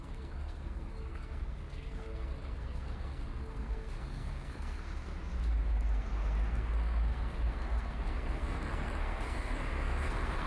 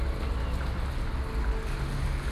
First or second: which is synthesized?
first